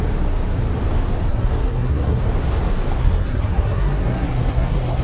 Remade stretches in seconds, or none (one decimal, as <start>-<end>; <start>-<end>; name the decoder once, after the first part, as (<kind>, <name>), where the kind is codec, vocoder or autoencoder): 1.3-2.2 (codec, SNAC); 3.0-5.0

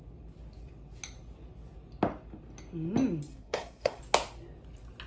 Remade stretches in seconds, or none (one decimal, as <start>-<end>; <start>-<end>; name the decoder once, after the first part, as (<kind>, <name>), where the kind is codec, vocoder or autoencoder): 3.3-4.0 (codec, SNAC)